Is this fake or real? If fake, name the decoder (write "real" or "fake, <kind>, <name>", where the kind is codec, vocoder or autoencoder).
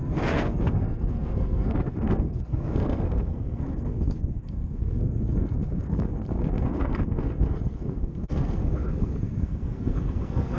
fake, codec, SNAC